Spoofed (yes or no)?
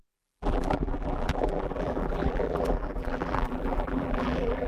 yes